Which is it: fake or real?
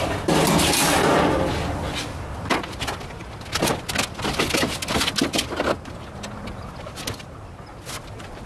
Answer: real